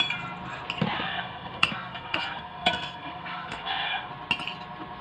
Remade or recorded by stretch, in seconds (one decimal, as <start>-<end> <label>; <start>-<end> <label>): 0.0-1.1 recorded; 1.1-4.1 remade; 4.1-5.0 recorded